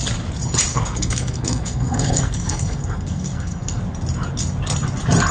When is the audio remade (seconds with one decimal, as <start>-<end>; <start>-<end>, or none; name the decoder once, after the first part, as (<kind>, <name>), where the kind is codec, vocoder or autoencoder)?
0.7-3.8 (codec, SNAC)